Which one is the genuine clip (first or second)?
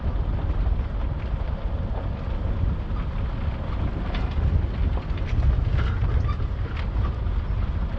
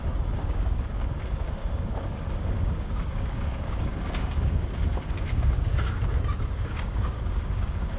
first